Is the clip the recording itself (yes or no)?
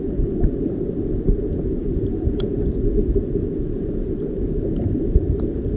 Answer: yes